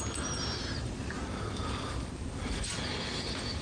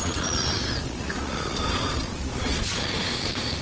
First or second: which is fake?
second